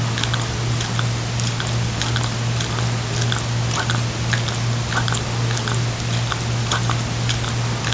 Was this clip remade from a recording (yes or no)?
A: no